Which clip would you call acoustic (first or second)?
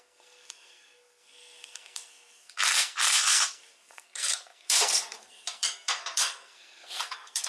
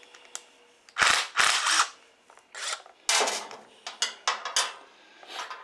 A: second